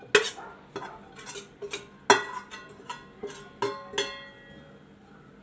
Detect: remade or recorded recorded